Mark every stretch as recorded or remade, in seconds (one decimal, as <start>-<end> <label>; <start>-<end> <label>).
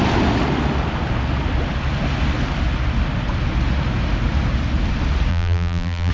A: 0.0-5.3 recorded; 5.3-6.1 remade